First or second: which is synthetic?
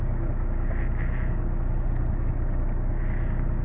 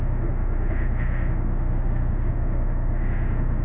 second